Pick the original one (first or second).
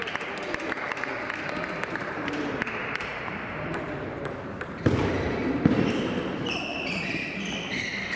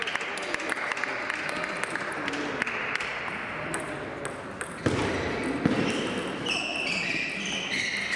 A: second